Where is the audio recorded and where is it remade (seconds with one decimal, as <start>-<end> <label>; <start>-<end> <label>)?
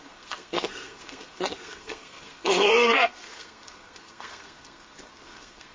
0.0-5.7 remade